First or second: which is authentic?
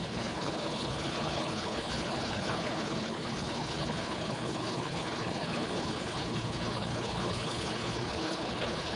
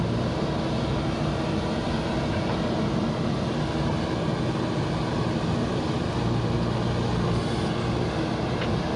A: second